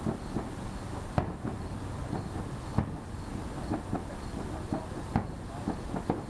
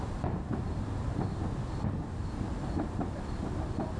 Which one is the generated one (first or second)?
second